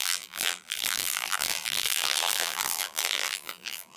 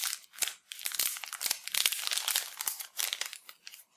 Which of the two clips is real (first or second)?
second